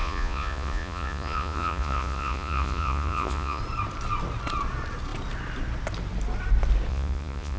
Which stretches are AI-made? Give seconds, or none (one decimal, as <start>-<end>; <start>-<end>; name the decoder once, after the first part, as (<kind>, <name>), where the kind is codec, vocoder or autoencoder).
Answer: 0.0-3.6 (vocoder, Vocos); 6.9-7.6